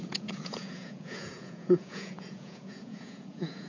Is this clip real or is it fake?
fake